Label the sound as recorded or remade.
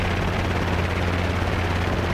recorded